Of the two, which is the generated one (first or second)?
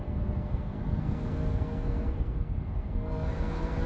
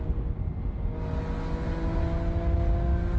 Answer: first